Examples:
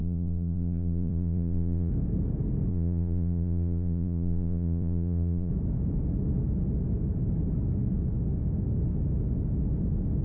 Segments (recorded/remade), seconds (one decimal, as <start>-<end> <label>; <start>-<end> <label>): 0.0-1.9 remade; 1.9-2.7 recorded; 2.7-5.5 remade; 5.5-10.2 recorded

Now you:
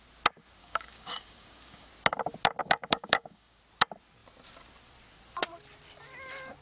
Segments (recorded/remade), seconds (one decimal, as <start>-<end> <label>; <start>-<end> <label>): 0.0-0.6 recorded; 0.6-1.9 remade; 1.9-2.6 recorded; 2.6-3.6 remade; 3.6-6.6 recorded

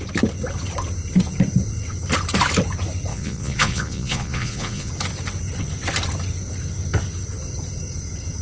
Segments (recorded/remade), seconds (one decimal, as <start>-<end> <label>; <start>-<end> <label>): 0.0-3.1 recorded; 3.1-4.9 remade; 4.9-8.4 recorded

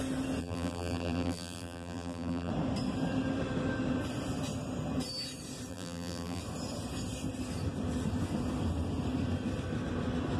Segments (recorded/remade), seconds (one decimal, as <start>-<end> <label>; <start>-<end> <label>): 0.0-0.4 recorded; 0.4-2.5 remade; 2.5-5.7 recorded; 5.7-6.4 remade; 6.4-10.4 recorded